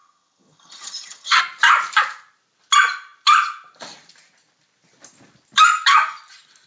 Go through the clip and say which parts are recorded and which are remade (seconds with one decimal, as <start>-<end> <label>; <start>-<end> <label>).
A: 0.0-1.4 remade; 1.4-6.7 recorded